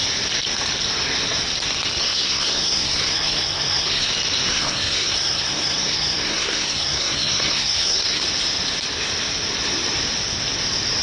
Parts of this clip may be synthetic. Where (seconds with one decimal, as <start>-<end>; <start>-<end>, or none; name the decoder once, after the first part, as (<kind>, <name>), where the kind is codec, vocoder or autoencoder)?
2.0-4.1 (codec, SNAC); 4.5-8.2